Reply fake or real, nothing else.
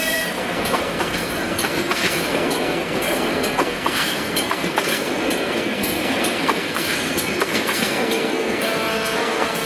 fake